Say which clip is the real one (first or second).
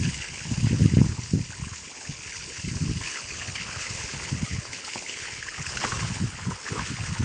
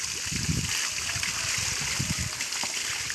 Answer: second